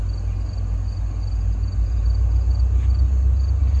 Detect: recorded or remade recorded